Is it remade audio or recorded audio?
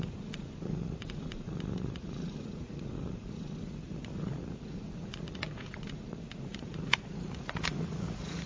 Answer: remade